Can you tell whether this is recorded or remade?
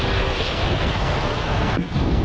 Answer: remade